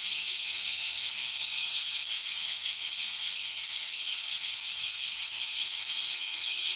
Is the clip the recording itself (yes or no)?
no